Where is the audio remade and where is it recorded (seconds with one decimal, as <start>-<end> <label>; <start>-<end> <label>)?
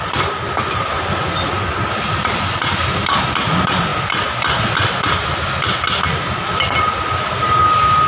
0.0-3.9 remade; 3.9-6.2 recorded; 6.2-8.1 remade